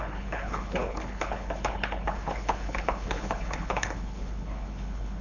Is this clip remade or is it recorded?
remade